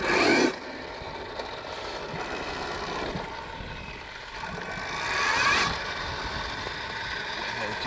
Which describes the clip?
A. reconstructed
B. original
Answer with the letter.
B